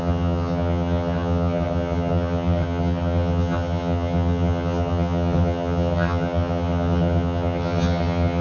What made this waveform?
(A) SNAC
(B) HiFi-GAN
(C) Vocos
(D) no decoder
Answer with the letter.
B